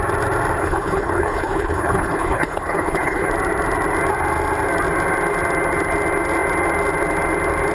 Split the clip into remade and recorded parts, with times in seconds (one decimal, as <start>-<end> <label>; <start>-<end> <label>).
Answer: 0.0-0.6 recorded; 0.6-3.3 remade; 3.3-7.7 recorded